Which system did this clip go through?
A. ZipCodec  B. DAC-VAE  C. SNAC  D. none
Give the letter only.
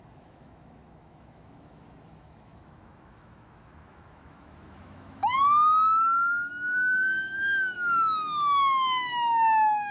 B